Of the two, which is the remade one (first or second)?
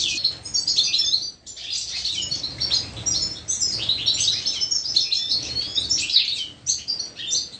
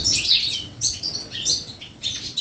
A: second